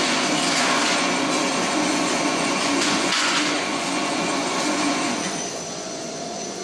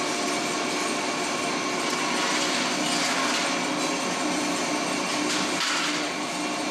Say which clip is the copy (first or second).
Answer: first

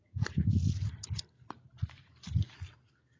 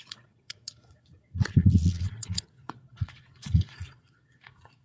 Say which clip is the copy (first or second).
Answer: second